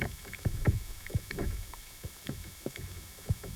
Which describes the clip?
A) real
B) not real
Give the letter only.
B